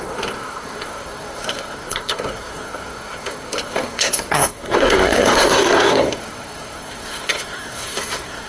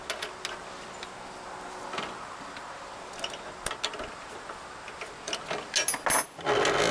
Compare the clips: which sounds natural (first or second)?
second